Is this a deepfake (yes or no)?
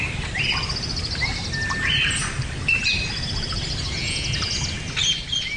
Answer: no